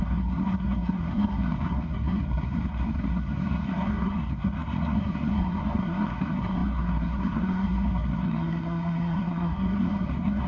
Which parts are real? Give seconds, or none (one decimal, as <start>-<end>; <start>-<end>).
none